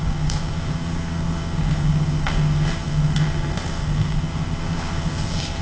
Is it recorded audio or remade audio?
remade